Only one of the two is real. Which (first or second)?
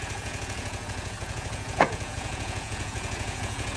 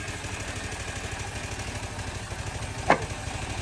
second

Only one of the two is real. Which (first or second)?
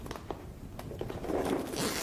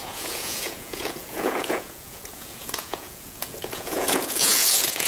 first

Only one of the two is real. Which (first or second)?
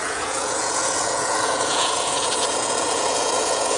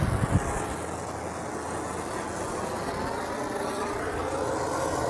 second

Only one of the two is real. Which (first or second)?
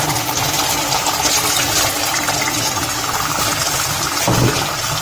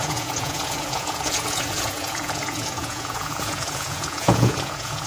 first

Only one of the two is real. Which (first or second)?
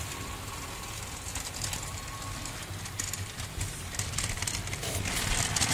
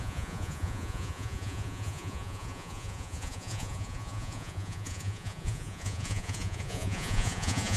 first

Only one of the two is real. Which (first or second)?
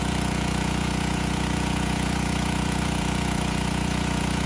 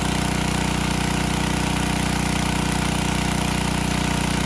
second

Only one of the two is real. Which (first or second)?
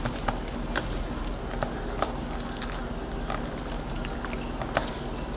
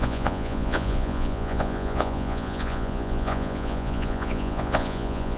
first